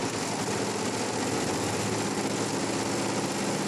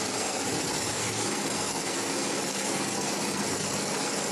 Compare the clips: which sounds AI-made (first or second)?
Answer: second